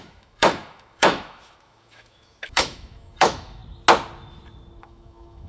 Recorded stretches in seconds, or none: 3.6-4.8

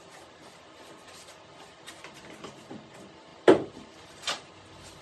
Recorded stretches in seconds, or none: 0.0-3.3; 4.5-5.0

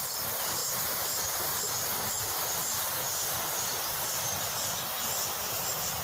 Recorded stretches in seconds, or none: 0.0-6.0

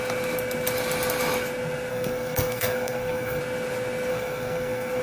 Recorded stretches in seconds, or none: 0.0-1.9; 3.4-4.1

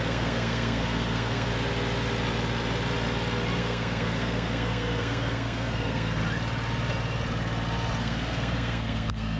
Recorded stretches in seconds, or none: 1.5-3.6; 6.2-8.0

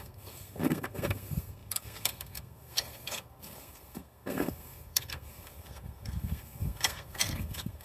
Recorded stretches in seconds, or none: none

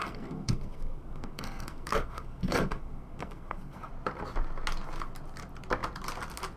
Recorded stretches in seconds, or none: 3.9-6.6

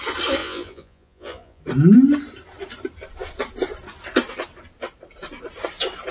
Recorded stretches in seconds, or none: 0.0-0.4; 1.6-6.1